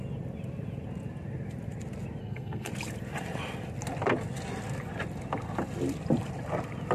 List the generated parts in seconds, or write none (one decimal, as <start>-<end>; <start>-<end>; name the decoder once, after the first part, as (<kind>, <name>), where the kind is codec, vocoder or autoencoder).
2.2-2.7 (codec, SNAC)